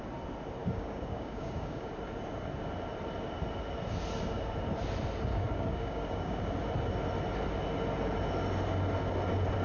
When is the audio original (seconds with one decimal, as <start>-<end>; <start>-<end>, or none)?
0.0-0.6; 1.9-5.3; 6.4-9.6